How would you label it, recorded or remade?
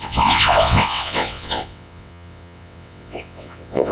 remade